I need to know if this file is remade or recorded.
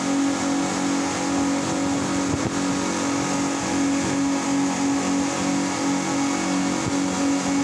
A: recorded